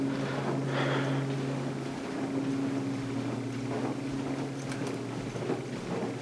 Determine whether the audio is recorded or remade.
recorded